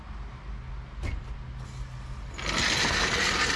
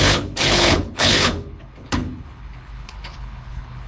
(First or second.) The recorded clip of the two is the first